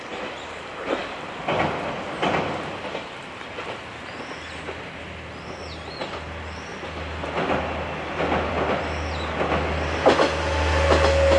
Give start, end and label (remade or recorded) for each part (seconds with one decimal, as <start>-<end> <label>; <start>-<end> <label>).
0.0-11.4 recorded